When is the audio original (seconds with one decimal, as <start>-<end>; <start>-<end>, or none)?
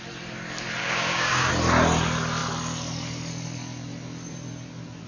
0.0-0.8; 1.5-5.1